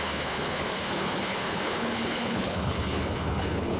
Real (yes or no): no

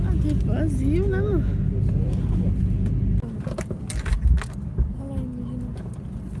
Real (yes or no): yes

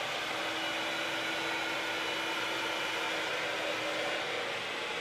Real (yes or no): yes